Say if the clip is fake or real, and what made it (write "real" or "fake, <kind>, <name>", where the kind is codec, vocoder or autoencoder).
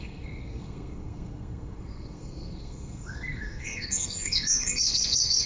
fake, codec, SNAC